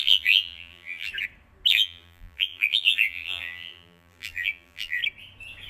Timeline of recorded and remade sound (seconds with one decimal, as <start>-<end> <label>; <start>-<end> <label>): 0.0-1.1 remade; 1.1-1.7 recorded; 1.7-5.0 remade; 5.0-5.7 recorded